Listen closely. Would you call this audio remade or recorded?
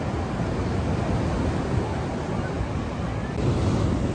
recorded